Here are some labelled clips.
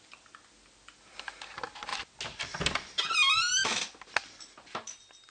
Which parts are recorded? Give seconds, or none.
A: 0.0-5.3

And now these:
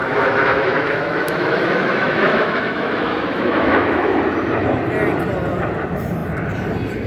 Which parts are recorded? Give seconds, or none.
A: 4.2-7.1

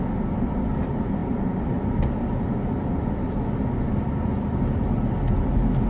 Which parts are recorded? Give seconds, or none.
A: 0.0-1.2; 1.8-5.9